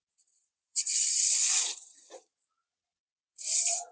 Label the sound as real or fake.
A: fake